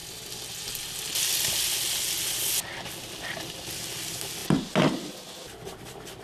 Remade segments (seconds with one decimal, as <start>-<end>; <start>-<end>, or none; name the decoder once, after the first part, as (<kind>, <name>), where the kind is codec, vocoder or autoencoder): 3.2-4.4 (vocoder, BigVGAN v2); 4.9-6.2